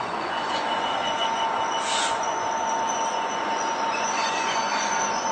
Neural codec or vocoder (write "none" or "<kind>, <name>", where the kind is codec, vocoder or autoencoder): vocoder, Vocos